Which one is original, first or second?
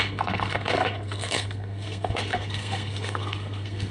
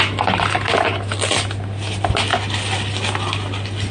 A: second